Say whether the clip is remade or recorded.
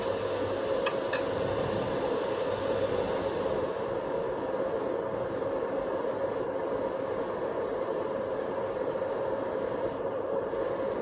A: recorded